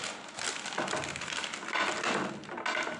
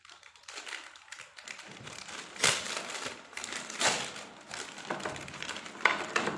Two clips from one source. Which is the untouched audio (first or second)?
first